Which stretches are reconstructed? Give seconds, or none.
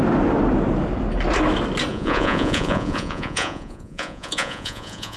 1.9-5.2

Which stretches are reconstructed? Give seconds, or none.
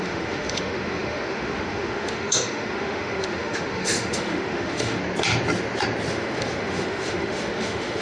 0.0-5.0; 6.1-8.0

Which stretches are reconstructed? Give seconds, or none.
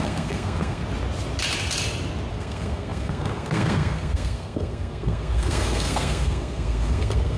0.0-0.8; 2.3-7.4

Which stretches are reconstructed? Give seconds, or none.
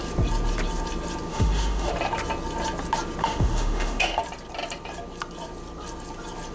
1.3-1.9; 3.2-4.2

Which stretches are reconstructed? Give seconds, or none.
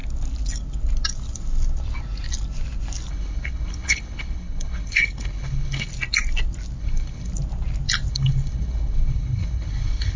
3.1-5.9; 6.8-7.3; 8.1-10.2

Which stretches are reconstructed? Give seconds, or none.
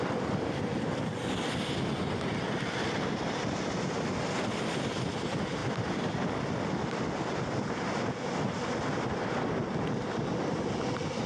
0.0-1.2; 1.9-5.6; 6.5-11.3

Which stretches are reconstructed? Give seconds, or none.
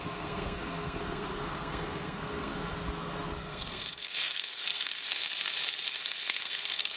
0.0-5.2; 5.9-7.0